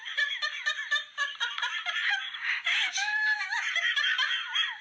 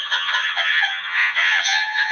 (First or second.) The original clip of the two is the first